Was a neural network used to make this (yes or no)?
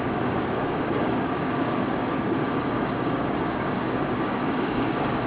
yes